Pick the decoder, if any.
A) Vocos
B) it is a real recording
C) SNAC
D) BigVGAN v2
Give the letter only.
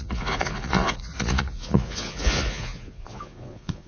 A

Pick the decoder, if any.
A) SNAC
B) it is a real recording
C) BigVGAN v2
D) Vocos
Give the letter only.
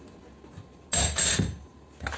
B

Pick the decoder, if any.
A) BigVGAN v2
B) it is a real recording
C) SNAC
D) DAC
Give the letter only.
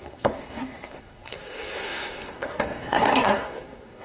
C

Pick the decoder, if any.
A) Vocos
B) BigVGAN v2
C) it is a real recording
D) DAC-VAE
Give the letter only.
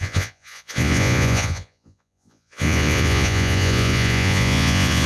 A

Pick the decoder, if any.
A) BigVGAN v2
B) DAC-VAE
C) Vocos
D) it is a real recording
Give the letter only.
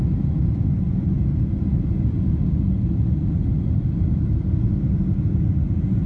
D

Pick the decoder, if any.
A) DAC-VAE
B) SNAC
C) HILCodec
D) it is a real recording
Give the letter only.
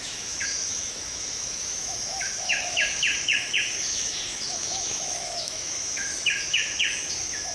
A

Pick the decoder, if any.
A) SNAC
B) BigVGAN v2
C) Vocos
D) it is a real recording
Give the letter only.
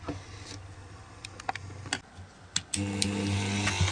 D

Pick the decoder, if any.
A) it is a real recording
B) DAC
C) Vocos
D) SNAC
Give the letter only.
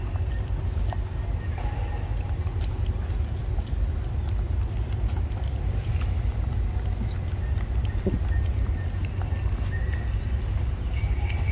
A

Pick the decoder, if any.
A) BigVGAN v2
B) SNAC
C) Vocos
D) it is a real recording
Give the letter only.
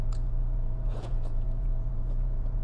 C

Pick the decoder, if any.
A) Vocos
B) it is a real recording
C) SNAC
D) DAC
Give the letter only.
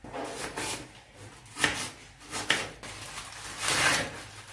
B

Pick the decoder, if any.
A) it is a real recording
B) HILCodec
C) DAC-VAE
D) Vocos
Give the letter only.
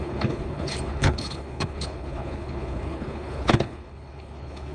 B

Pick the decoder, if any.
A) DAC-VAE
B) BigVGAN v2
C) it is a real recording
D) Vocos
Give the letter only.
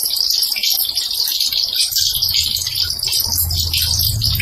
C